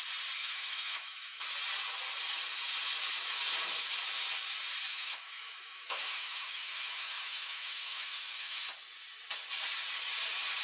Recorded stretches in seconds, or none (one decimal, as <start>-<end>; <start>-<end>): 0.0-0.4; 1.4-4.9; 8.6-10.6